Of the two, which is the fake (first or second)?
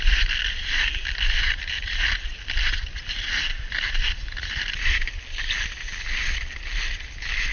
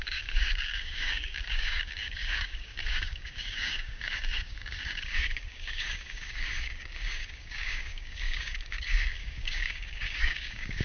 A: second